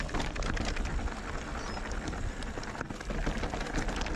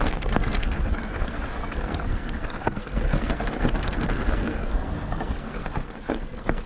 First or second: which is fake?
second